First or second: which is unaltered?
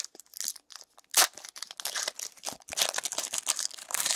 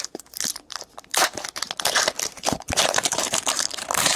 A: first